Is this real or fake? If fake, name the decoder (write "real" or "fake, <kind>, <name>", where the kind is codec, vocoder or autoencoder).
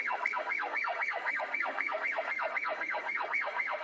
fake, codec, SNAC